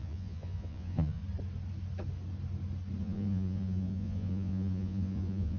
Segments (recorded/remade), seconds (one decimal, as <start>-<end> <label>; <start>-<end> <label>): 0.0-1.2 remade; 1.2-3.0 recorded; 3.0-5.6 remade